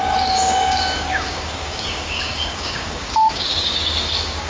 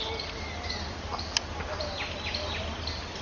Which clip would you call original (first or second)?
second